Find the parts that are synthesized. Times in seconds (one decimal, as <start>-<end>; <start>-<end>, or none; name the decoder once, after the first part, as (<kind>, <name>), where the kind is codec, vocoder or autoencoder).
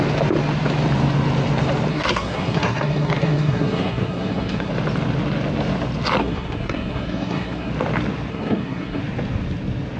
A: 1.9-4.7 (codec, SNAC); 6.2-7.7; 8.3-9.0